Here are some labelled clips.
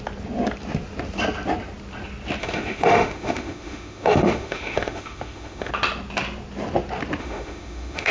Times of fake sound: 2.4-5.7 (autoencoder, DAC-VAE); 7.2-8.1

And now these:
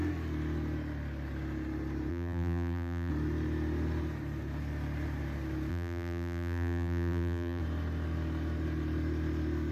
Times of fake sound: 2.1-3.1 (vocoder, BigVGAN v2); 5.7-7.6

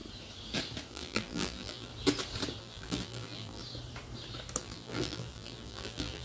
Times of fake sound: 0.9-1.9 (vocoder, BigVGAN v2); 2.6-3.6; 4.6-6.2

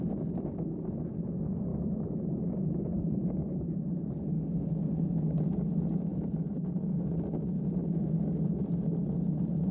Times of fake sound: 1.7-4.6 (vocoder, BigVGAN v2); 6.1-6.8

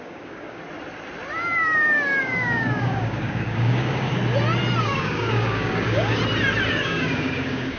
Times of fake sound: 0.0-0.6 (codec, DAC); 2.2-4.2; 4.8-6.2; 6.7-7.8